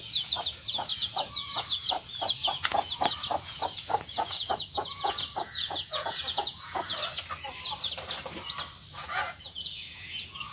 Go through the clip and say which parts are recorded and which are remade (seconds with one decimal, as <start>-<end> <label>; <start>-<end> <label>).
0.0-6.9 remade; 6.9-8.9 recorded; 8.9-10.5 remade

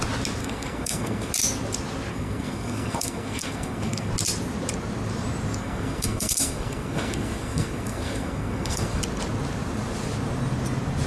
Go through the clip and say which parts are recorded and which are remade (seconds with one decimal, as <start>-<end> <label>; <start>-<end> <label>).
0.0-0.4 recorded; 0.4-1.3 remade; 1.3-2.1 recorded; 2.1-4.1 remade; 4.1-5.6 recorded; 5.6-9.0 remade; 9.0-11.1 recorded